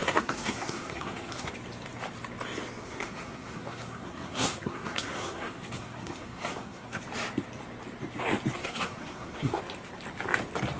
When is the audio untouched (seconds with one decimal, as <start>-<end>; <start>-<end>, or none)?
1.5-2.8; 7.0-8.6; 9.6-10.8